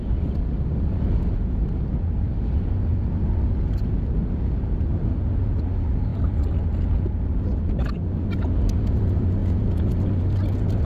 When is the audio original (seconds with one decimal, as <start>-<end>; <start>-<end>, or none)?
0.0-10.8